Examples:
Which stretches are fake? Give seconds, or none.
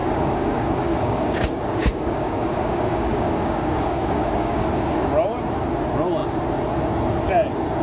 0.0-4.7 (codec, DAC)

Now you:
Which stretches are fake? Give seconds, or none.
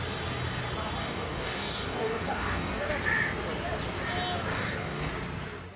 1.0-2.9 (codec, DAC); 4.5-5.1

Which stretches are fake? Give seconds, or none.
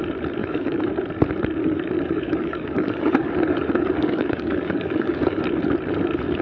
0.4-0.9 (codec, DAC); 1.6-5.4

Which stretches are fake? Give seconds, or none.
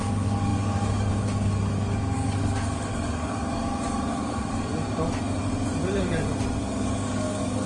0.0-4.7 (codec, DAC); 6.6-7.7